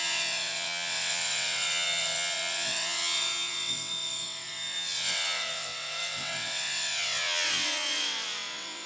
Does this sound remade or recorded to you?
remade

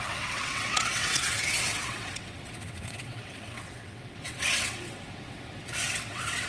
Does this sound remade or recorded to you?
remade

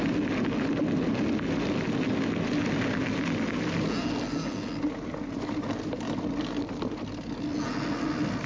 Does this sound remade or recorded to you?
recorded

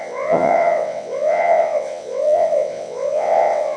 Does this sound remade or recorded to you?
remade